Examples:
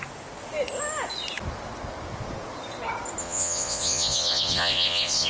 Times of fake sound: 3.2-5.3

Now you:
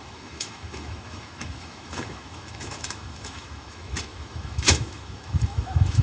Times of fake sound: 0.0-6.0

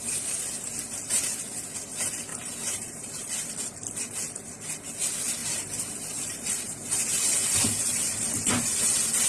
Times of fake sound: 2.3-3.3; 5.4-8.5

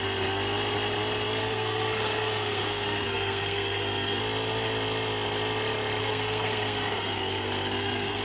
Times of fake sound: 1.4-4.2; 6.0-8.2